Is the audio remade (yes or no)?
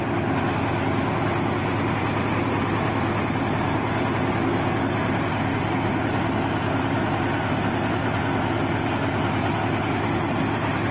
no